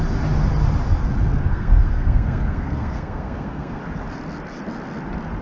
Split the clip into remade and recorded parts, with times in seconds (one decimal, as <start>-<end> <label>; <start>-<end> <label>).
0.0-1.5 recorded; 1.5-3.8 remade; 3.8-5.4 recorded